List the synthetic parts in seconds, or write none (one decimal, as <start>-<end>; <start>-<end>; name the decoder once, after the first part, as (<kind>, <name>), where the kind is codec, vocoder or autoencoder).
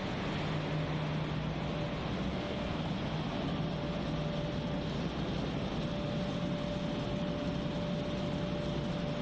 2.3-2.8 (codec, SNAC)